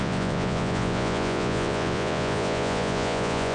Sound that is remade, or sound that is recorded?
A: remade